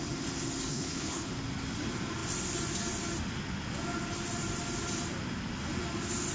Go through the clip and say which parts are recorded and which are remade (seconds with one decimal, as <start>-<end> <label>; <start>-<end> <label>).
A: 0.0-0.7 recorded; 0.7-1.3 remade; 1.3-6.3 recorded